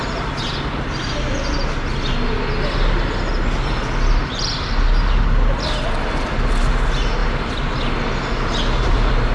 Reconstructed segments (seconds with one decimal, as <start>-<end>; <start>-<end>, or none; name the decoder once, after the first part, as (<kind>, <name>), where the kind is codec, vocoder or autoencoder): none